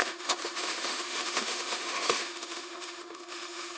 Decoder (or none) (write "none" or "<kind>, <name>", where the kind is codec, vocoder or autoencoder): autoencoder, DAC-VAE